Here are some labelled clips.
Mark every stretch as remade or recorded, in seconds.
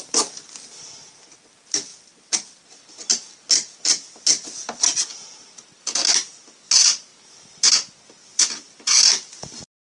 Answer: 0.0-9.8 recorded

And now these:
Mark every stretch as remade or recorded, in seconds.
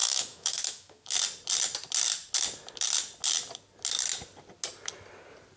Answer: 0.0-1.2 remade; 1.2-5.6 recorded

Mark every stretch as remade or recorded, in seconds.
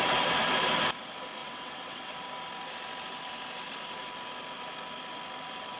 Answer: 0.0-1.4 recorded; 1.4-2.1 remade; 2.1-5.8 recorded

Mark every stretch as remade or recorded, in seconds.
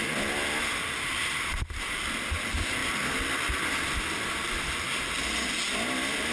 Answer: 0.0-6.3 recorded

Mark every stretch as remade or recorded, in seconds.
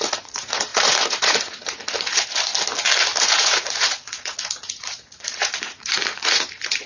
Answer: 0.0-2.5 remade; 2.5-3.2 recorded; 3.2-6.9 remade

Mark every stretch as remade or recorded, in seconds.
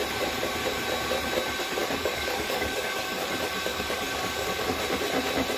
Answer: 0.0-1.8 recorded; 1.8-3.3 remade; 3.3-3.7 recorded; 3.7-4.8 remade; 4.8-5.6 recorded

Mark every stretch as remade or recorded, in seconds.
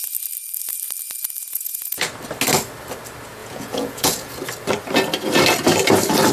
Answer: 0.0-1.4 recorded; 1.4-2.1 remade; 2.1-3.4 recorded; 3.4-4.4 remade; 4.4-6.3 recorded